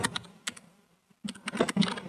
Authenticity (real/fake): real